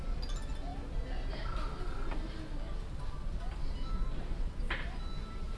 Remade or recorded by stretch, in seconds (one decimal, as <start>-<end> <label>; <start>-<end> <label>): 0.0-5.6 recorded